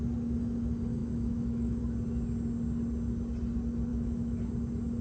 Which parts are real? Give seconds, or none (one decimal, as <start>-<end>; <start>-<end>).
0.0-1.0; 1.8-3.9; 4.4-5.0